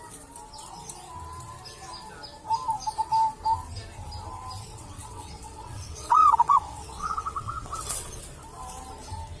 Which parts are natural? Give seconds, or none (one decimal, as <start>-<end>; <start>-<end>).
0.0-4.7; 8.2-9.4